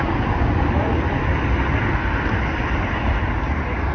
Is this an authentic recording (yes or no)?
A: yes